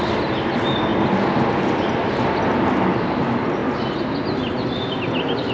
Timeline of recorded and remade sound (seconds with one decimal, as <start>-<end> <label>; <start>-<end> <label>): 0.0-5.5 recorded